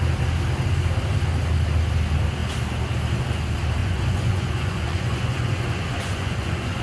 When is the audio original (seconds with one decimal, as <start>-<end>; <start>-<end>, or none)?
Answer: 0.0-3.8